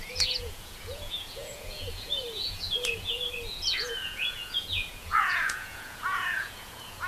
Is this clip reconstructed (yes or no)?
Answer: yes